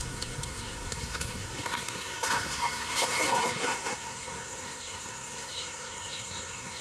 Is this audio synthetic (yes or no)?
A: yes